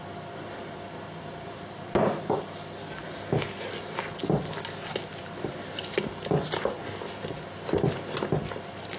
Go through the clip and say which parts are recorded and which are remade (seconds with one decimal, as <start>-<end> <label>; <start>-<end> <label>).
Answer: 0.0-9.0 recorded